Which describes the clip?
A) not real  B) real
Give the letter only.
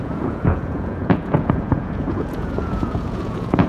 A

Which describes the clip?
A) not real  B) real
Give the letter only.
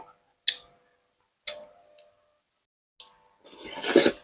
B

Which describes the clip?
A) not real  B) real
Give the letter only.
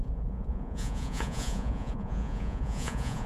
A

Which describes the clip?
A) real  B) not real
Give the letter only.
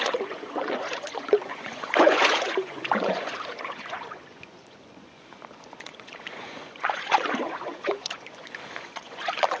B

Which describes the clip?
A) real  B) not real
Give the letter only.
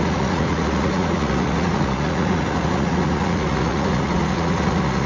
B